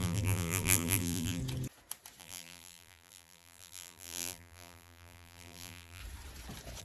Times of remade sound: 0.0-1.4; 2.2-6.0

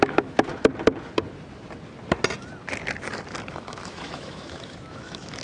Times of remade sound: 0.0-0.5; 3.5-5.4

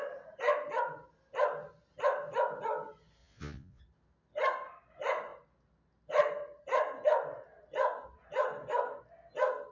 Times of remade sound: 3.2-3.8

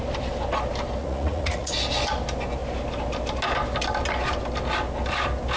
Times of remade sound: 1.0-1.7

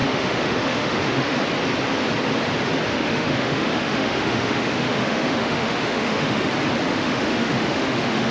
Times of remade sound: 0.0-1.4; 2.9-6.5; 6.9-8.3

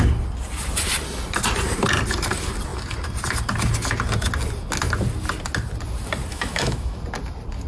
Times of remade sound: 6.3-7.0